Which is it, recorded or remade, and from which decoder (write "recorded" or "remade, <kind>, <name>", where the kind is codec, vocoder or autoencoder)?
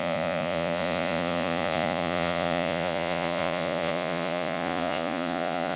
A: remade, vocoder, Vocos